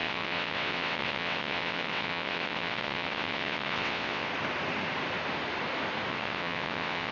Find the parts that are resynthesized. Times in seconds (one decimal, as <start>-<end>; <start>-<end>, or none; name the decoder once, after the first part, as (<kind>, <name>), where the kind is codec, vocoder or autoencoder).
0.0-4.3 (vocoder, WaveNeXt); 6.1-7.1